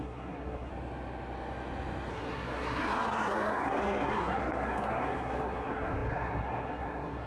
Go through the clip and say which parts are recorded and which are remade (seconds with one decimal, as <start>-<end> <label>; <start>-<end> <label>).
0.0-0.7 remade; 0.7-2.1 recorded; 2.1-7.3 remade